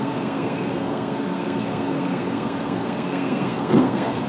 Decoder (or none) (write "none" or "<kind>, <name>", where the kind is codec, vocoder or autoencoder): codec, SNAC